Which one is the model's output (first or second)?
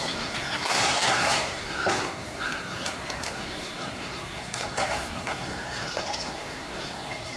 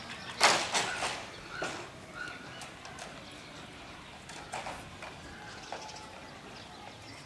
first